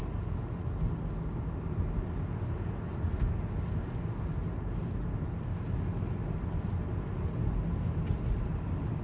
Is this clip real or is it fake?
real